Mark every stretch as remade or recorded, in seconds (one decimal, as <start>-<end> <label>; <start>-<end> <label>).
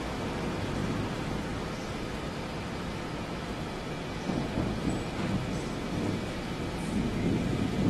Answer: 0.0-7.9 remade